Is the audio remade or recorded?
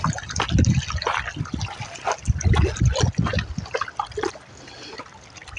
recorded